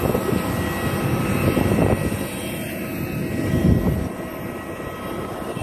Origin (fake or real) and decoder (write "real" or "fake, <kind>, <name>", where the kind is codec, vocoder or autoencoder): real